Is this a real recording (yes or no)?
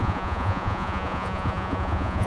no